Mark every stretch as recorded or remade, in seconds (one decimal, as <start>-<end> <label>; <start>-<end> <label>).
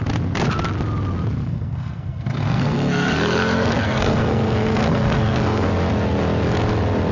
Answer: 0.0-1.4 recorded; 1.4-5.7 remade; 5.7-7.1 recorded